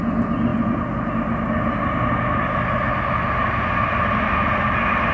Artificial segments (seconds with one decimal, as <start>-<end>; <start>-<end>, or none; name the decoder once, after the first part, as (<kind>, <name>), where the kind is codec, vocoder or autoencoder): none